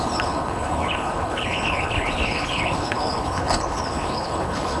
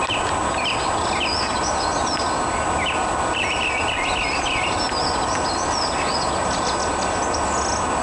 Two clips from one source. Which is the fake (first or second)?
first